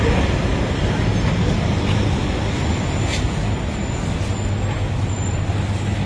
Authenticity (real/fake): real